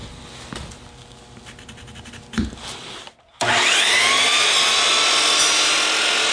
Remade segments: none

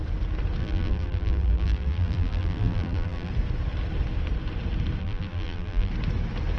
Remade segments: 0.6-3.3 (vocoder, BigVGAN v2); 5.0-5.9

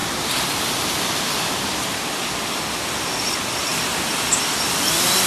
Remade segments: 0.0-3.2 (vocoder, BigVGAN v2)